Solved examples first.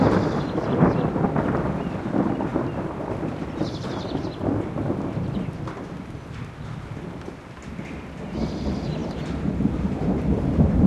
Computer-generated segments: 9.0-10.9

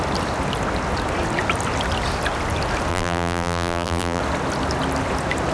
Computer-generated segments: 2.9-4.2

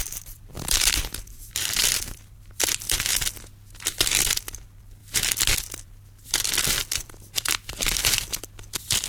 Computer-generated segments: 0.0-3.1; 4.4-5.0; 5.6-9.1